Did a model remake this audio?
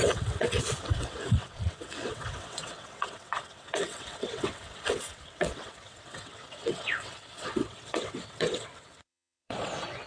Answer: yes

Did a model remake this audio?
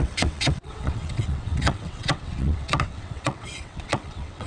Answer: yes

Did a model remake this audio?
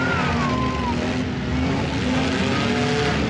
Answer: no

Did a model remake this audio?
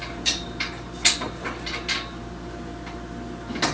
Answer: no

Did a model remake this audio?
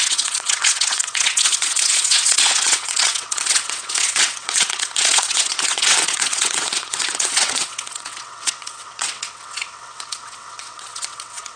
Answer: yes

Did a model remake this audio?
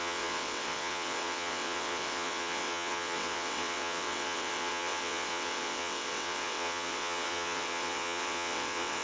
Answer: yes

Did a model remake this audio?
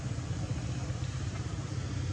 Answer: no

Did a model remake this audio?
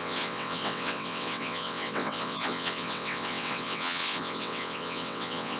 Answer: yes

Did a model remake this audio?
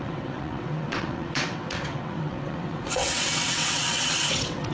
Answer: yes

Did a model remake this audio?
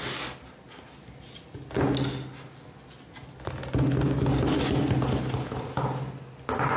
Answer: no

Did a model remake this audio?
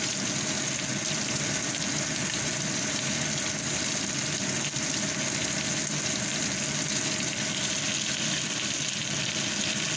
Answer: no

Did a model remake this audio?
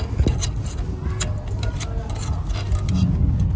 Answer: no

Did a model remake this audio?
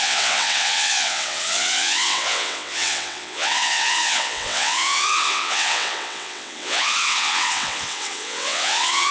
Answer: yes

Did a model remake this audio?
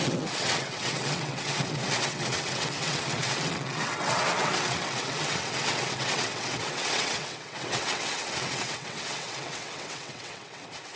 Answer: yes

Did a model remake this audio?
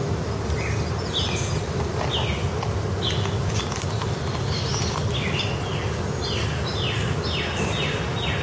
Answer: no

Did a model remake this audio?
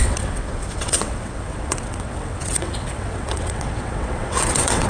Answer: yes